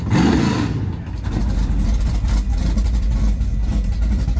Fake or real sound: real